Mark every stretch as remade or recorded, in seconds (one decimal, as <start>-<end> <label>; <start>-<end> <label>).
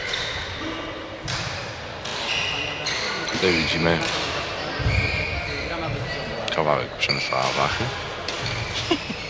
0.0-9.3 recorded